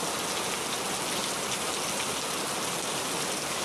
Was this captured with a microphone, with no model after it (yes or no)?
yes